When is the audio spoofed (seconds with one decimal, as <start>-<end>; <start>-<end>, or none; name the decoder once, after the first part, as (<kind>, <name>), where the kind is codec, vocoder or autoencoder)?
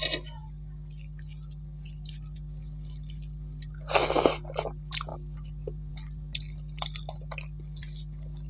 none